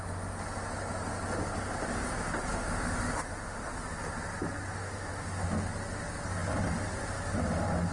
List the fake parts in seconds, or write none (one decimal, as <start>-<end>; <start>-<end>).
2.5-3.8; 4.8-5.5